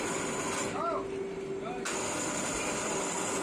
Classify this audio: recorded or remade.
recorded